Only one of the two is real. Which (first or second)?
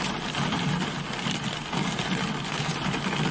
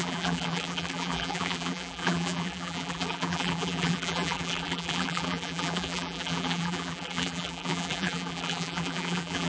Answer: first